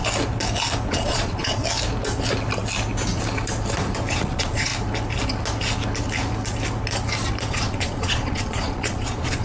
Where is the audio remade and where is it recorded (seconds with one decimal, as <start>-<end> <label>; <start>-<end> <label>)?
0.0-0.9 recorded; 0.9-1.6 remade; 1.6-4.1 recorded; 4.1-4.7 remade; 4.7-7.5 recorded; 7.5-9.4 remade